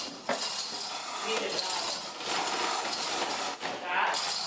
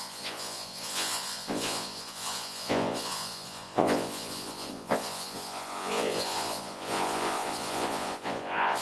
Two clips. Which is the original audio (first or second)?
first